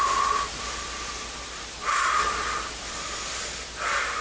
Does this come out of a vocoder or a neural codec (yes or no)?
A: no